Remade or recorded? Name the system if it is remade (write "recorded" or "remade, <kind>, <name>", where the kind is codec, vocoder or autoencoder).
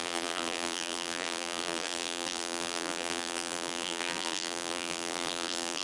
remade, vocoder, BigVGAN v2